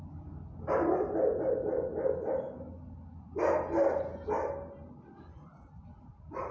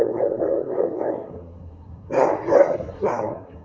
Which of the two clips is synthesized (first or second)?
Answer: second